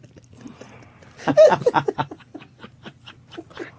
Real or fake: real